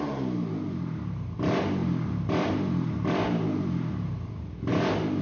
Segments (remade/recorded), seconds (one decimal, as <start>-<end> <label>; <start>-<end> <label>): 0.0-5.2 recorded